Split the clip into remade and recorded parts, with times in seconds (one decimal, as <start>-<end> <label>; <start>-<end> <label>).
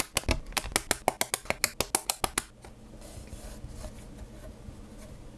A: 0.0-5.4 recorded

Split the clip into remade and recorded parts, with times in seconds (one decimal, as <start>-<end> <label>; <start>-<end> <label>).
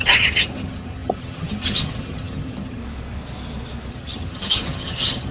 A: 0.0-2.8 remade; 2.8-3.9 recorded; 3.9-5.3 remade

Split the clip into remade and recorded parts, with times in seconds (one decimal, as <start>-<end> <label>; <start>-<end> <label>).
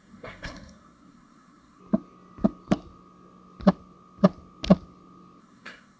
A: 0.0-1.8 remade; 1.8-5.4 recorded; 5.4-6.0 remade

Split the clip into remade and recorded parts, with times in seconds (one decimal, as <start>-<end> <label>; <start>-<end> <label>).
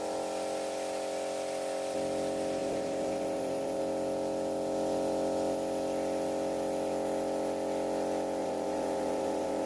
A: 0.0-2.6 recorded; 2.6-3.8 remade; 3.8-8.4 recorded; 8.4-9.7 remade